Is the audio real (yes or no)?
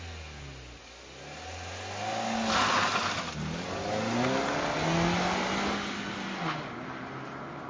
yes